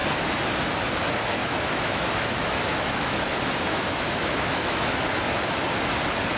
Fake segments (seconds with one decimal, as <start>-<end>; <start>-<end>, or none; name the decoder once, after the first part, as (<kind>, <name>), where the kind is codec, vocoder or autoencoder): 1.4-5.2 (autoencoder, DAC-VAE)